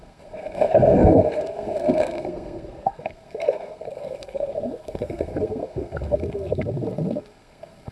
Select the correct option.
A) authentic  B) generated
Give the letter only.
B